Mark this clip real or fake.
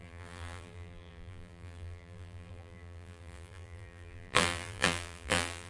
fake